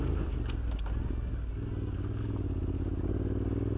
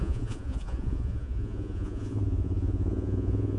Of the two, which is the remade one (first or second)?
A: second